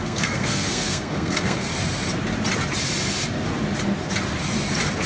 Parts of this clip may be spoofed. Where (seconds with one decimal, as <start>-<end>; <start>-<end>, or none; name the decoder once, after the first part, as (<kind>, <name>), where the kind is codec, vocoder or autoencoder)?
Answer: 0.0-1.7 (codec, SNAC)